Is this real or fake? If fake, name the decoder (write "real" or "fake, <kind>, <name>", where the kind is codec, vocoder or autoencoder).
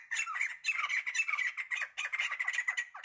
real